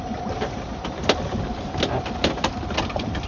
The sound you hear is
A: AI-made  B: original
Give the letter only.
A